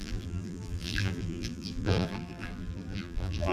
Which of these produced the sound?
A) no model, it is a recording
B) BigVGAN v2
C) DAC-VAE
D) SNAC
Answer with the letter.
B